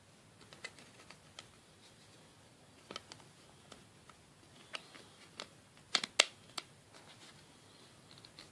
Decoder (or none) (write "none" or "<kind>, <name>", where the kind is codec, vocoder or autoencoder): none